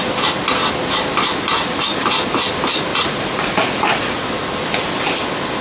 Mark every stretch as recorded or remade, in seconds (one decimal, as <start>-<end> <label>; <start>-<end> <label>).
0.0-2.9 recorded; 2.9-4.2 remade; 4.2-5.6 recorded